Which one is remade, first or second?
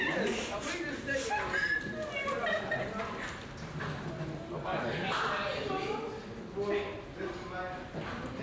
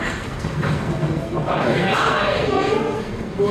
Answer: second